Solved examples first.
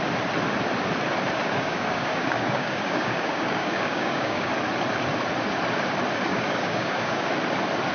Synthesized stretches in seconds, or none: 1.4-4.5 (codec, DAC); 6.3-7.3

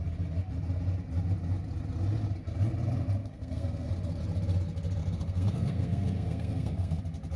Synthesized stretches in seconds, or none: 3.2-3.9 (codec, SNAC); 5.0-7.0

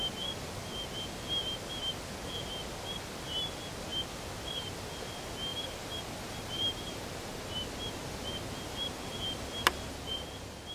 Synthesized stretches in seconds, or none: 5.5-7.4 (vocoder, BigVGAN v2)

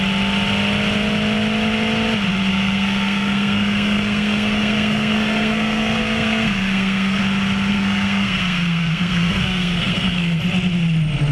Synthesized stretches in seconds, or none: 2.5-7.2 (codec, SNAC); 7.7-10.4

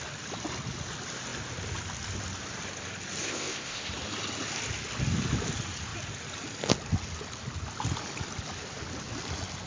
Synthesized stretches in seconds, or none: 3.2-3.9 (codec, ZipCodec)

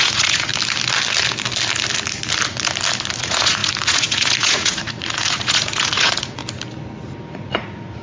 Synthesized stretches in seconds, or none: 0.0-0.5 (vocoder, Vocos); 3.2-6.4; 7.3-8.0

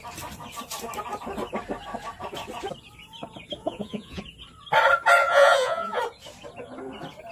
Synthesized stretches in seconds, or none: 3.6-4.2 (vocoder, Vocos); 5.2-6.0

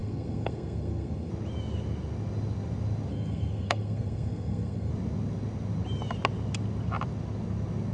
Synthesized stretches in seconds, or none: 0.0-1.3 (codec, SNAC); 3.1-4.9